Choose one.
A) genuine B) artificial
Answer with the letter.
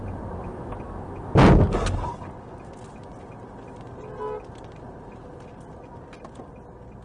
A